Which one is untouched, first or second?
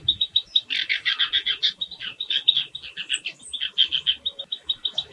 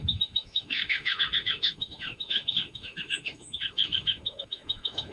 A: first